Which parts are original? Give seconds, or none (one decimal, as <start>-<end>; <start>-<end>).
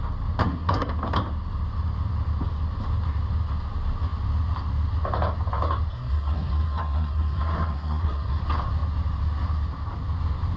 0.0-0.4; 0.9-5.9; 8.4-10.6